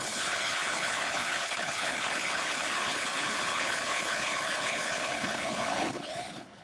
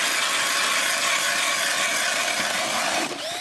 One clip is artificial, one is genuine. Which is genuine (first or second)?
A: second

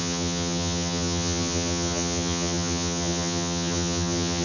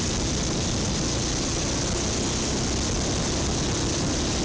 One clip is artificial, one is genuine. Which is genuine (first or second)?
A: second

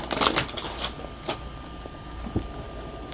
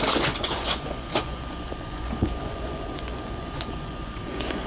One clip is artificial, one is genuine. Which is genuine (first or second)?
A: first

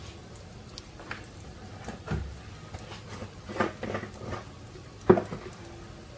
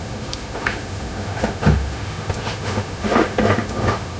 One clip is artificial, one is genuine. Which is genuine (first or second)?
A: first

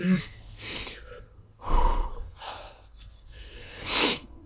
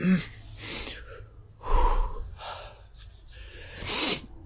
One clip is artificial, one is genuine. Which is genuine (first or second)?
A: second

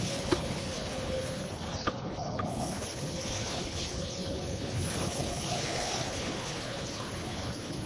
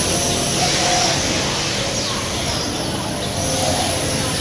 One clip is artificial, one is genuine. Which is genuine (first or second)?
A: second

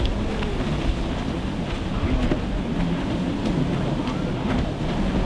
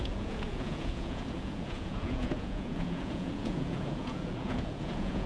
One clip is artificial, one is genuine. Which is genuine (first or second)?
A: first